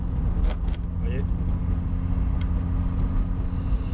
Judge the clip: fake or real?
real